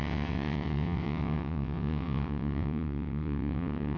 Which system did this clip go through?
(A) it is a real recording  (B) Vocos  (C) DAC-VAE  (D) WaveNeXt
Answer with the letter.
D